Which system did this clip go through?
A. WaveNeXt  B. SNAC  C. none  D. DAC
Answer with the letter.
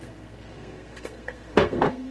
B